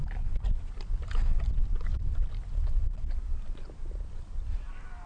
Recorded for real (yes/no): yes